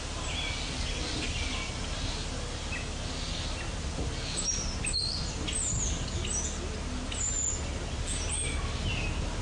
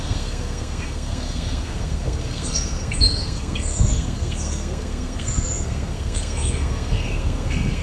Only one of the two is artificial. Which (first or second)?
second